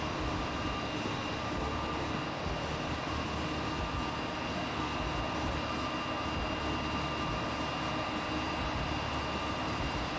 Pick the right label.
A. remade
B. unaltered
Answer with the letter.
B